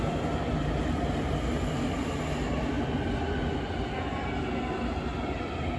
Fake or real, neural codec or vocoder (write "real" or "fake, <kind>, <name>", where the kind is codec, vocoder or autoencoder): real